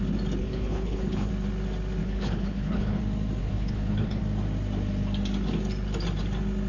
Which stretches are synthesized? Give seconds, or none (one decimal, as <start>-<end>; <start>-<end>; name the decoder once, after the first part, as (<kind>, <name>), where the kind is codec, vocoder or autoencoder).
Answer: 0.4-1.3 (codec, HILCodec); 2.0-3.0; 3.4-4.2